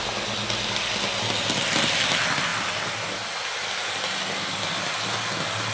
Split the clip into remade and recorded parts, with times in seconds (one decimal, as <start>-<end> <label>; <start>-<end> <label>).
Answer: 0.0-5.7 recorded